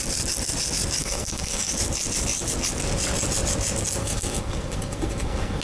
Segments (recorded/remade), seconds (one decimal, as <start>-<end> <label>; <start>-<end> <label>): 0.0-1.0 recorded; 1.0-1.7 remade; 1.7-4.0 recorded; 4.0-5.6 remade